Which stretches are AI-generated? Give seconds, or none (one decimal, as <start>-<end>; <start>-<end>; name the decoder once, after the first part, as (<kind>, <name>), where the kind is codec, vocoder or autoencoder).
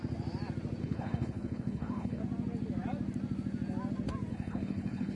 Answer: 0.8-2.2 (codec, HILCodec); 4.3-5.2